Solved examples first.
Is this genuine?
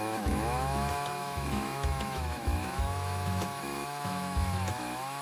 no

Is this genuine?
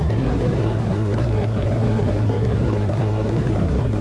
no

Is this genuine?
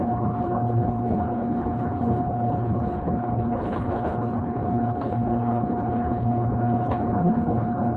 no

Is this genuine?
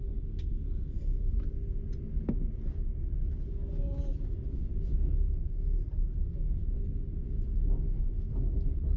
yes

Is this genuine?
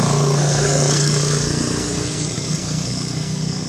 no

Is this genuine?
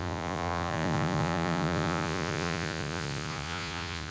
no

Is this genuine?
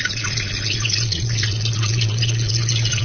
no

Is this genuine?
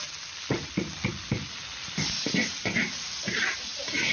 yes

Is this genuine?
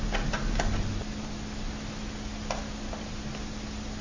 yes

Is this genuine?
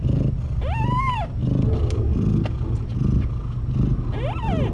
yes